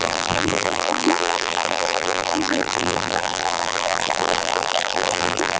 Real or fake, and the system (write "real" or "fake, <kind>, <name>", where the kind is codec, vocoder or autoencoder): fake, vocoder, BigVGAN v2